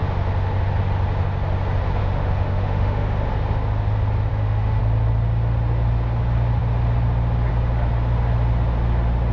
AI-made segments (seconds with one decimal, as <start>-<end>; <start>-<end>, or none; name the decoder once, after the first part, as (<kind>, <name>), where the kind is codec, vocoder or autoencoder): 2.0-3.3 (autoencoder, DAC-VAE); 4.3-4.8